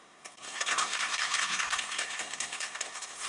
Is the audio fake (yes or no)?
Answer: yes